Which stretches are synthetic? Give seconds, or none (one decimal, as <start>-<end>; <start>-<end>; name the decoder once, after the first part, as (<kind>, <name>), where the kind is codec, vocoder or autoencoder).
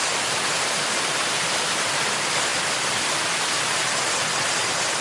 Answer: 2.5-3.9 (vocoder, BigVGAN v2)